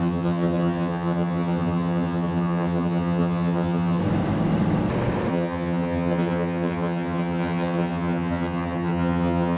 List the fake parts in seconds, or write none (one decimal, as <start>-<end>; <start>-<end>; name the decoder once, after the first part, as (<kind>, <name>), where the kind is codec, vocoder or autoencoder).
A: 0.0-4.0 (vocoder, HiFi-GAN); 5.3-9.6